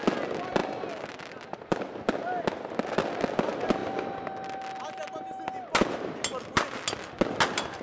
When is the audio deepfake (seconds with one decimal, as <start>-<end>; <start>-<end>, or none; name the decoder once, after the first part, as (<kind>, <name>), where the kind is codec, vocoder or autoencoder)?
none